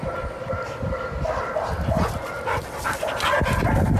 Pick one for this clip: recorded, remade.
recorded